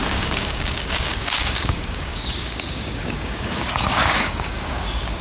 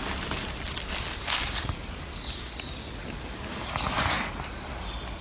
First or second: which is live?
second